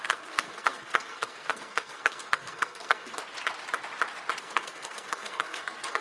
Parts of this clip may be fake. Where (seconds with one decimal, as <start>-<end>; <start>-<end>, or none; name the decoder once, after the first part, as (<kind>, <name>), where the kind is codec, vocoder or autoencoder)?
0.0-3.2 (codec, SNAC); 4.4-6.0